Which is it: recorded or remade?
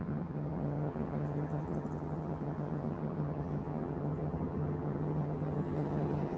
remade